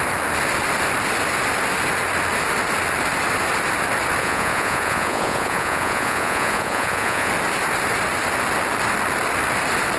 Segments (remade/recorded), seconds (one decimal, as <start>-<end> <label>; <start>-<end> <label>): 0.0-4.2 recorded; 4.2-7.3 remade; 7.3-10.0 recorded